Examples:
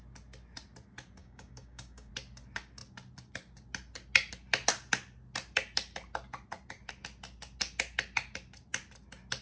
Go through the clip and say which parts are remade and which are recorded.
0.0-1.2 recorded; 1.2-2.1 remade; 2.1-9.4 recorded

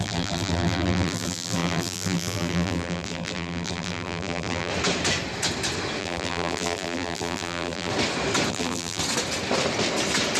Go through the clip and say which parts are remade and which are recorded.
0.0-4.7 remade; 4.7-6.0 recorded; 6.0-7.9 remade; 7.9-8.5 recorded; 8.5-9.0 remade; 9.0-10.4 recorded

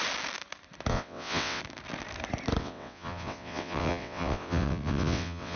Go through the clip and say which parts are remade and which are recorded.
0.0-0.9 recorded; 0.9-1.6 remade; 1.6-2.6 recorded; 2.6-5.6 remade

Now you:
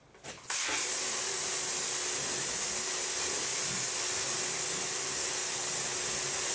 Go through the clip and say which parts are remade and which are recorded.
0.0-6.5 recorded